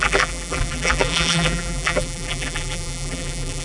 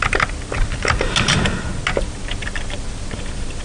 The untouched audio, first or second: second